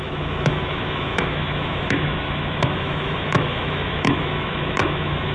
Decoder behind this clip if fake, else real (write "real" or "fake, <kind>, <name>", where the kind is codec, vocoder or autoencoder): fake, autoencoder, DAC-VAE